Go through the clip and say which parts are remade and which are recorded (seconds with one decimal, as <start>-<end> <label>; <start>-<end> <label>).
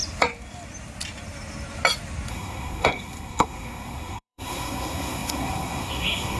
0.0-2.3 recorded; 2.3-6.4 remade